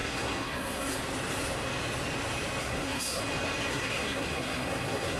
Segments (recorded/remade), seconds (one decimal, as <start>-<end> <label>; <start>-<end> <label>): 0.0-1.0 remade; 1.0-2.6 recorded; 2.6-3.2 remade; 3.2-3.7 recorded; 3.7-5.2 remade